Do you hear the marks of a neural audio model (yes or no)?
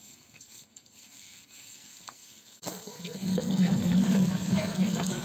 yes